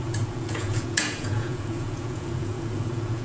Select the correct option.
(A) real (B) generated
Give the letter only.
B